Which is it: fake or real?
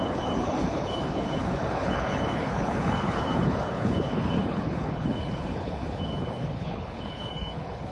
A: fake